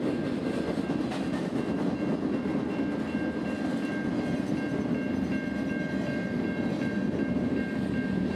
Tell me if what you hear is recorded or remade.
recorded